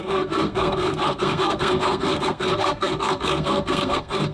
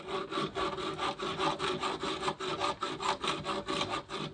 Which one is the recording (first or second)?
second